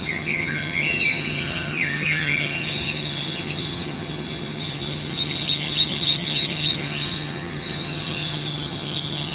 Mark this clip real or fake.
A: fake